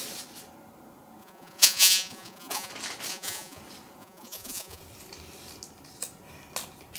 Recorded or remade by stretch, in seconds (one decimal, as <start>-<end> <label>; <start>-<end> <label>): 0.0-1.2 recorded; 1.2-2.7 remade; 2.7-3.1 recorded; 3.1-3.6 remade; 3.6-4.0 recorded; 4.0-4.8 remade; 4.8-7.0 recorded